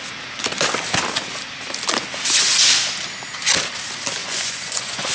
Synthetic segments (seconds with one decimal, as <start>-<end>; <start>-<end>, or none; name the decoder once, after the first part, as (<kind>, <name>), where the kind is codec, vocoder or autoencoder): 4.2-5.1 (vocoder, Vocos)